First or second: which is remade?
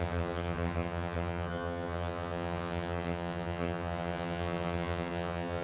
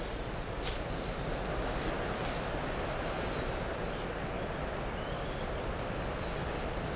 first